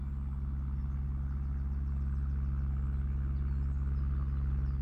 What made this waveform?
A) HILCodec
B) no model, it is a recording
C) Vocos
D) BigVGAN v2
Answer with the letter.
B